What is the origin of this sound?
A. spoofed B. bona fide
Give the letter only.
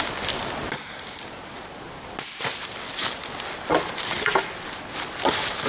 B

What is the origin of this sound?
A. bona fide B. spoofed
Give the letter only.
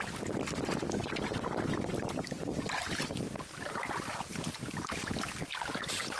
B